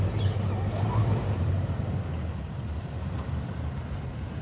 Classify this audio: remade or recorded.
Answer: recorded